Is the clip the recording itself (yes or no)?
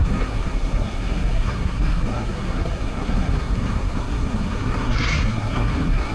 no